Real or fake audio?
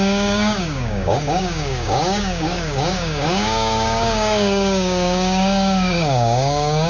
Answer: fake